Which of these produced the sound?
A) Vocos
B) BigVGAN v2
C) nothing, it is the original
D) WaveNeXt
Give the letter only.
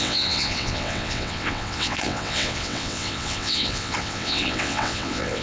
D